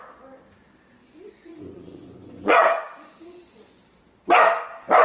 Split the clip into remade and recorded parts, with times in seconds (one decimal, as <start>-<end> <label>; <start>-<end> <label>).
0.0-1.0 recorded; 1.0-4.0 remade; 4.0-5.0 recorded